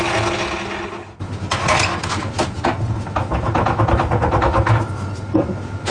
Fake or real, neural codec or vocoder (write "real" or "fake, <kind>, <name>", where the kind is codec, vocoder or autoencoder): real